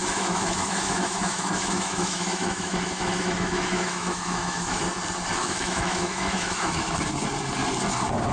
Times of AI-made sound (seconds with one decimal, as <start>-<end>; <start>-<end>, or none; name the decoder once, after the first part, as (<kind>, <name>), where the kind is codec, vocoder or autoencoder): 0.0-4.8 (autoencoder, DAC-VAE); 5.4-7.0